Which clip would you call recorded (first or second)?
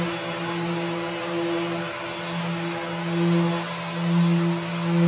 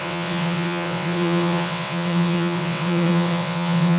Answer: first